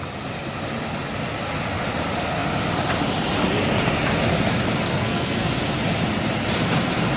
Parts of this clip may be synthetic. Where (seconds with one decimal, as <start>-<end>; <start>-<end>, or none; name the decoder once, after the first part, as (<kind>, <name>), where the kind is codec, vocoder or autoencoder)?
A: 4.9-5.5 (codec, SNAC)